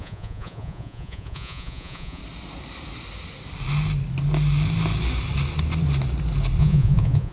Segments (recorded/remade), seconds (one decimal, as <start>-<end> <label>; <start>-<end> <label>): 0.0-2.2 remade; 2.2-6.6 recorded; 6.6-7.3 remade